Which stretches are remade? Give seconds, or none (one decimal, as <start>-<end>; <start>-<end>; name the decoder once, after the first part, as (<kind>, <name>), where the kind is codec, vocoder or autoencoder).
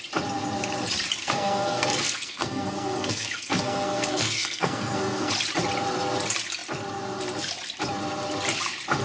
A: 1.2-5.3 (codec, SNAC)